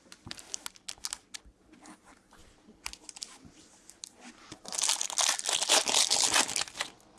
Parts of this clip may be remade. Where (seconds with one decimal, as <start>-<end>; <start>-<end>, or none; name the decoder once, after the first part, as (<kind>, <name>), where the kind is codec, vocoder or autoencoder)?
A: none